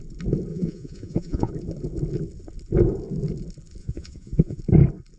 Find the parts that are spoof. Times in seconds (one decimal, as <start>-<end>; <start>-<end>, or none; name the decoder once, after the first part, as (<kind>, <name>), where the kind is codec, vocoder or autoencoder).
0.5-1.5 (vocoder, Vocos); 3.8-4.6